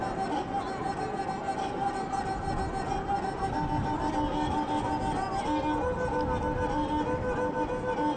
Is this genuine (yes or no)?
yes